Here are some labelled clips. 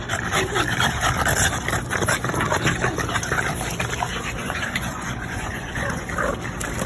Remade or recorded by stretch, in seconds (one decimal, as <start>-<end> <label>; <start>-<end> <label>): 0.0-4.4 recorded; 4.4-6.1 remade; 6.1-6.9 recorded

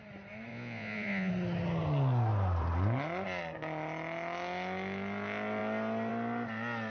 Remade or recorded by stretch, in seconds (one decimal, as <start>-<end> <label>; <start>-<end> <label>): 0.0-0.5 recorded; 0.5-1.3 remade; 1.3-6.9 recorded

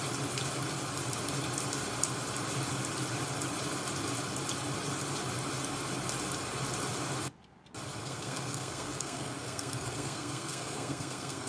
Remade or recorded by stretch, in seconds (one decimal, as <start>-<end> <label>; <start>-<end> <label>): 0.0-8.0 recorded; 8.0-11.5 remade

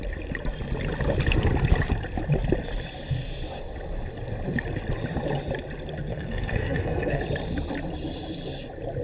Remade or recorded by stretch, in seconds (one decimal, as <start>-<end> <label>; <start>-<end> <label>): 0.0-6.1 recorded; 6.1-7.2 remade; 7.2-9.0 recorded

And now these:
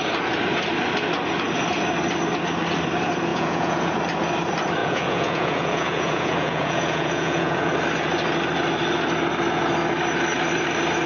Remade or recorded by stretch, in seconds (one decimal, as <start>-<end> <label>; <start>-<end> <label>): 0.0-3.3 recorded; 3.3-4.0 remade; 4.0-4.8 recorded; 4.8-7.7 remade; 7.7-11.1 recorded